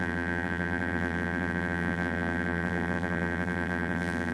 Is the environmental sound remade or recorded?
remade